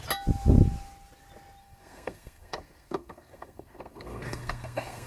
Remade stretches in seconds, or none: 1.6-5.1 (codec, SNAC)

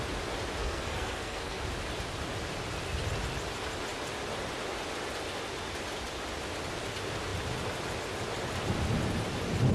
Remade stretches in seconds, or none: 0.6-1.6 (codec, SNAC)

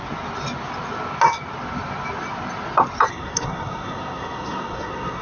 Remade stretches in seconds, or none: 3.1-5.2 (codec, SNAC)

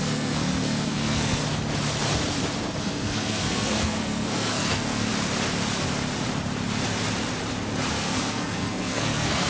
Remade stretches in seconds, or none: 0.0-1.4 (codec, SNAC); 2.8-5.1; 7.9-9.5

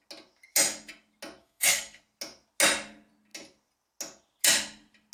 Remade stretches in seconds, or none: 1.4-2.0 (codec, SNAC)